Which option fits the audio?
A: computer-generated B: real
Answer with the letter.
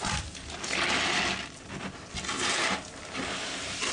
B